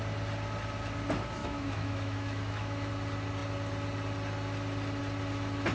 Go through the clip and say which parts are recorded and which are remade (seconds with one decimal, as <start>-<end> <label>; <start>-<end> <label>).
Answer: 0.0-1.4 recorded; 1.4-2.9 remade; 2.9-5.7 recorded